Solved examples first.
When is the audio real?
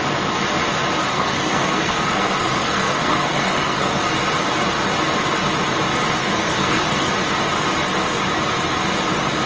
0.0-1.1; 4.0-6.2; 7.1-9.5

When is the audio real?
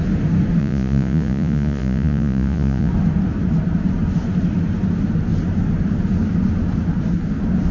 0.0-0.6; 2.9-7.7